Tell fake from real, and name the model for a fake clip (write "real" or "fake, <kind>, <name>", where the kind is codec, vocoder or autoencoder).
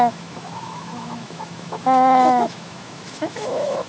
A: fake, autoencoder, DAC-VAE